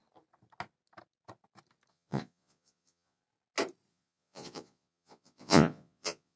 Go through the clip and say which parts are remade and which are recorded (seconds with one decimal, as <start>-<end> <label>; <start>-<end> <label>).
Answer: 0.0-1.9 recorded; 1.9-3.2 remade; 3.2-3.9 recorded; 3.9-6.4 remade